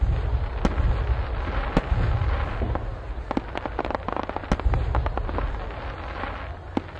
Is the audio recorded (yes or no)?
yes